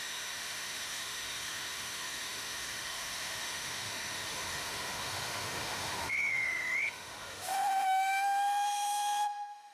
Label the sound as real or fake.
fake